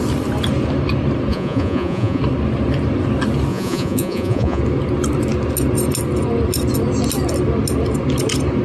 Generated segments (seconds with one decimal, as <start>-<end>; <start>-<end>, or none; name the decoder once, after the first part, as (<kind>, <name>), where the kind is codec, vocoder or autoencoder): 1.3-2.2 (vocoder, Vocos); 3.5-4.6

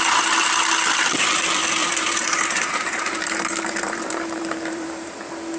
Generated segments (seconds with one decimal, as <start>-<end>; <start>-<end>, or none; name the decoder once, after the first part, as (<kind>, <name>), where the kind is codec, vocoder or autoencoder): 1.8-5.1 (vocoder, BigVGAN v2)

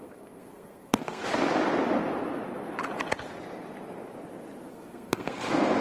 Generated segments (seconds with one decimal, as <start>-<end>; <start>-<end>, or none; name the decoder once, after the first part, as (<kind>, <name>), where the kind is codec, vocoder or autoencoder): 0.0-1.2 (codec, SNAC); 4.7-5.8

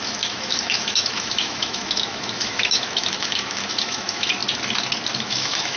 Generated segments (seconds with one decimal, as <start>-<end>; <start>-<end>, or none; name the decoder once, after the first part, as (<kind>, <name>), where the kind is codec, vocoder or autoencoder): 0.0-4.4 (autoencoder, DAC-VAE); 5.1-5.8

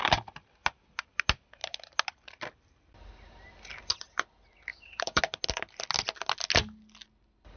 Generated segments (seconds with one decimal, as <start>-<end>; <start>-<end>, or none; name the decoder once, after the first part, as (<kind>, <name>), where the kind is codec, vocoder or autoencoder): 4.7-5.2 (codec, DAC)

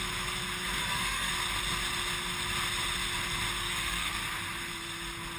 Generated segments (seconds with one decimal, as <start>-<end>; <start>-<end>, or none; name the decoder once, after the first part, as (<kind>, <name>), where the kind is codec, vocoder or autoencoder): 0.8-1.3 (codec, SNAC); 3.6-4.2

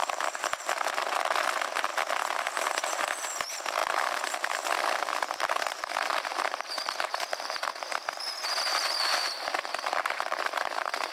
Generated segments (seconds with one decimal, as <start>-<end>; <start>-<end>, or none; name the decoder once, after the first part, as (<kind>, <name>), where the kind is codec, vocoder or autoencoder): 0.0-0.5 (vocoder, BigVGAN v2); 3.8-7.7; 8.7-11.1